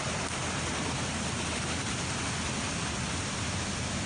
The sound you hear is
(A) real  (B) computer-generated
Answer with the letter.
A